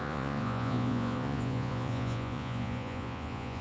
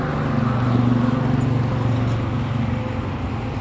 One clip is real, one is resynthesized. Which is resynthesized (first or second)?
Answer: first